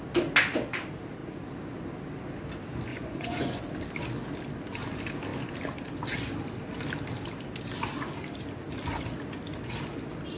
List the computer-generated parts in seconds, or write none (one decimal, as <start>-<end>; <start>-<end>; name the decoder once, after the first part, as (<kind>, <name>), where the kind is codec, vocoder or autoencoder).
2.9-3.6 (vocoder, Vocos)